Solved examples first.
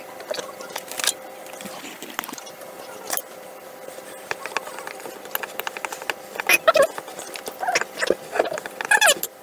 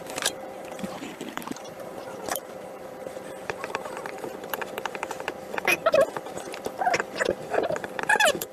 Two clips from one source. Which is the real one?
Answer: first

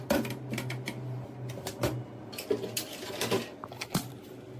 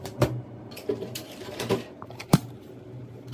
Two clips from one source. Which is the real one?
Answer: first